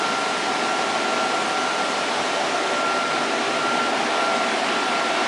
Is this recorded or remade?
recorded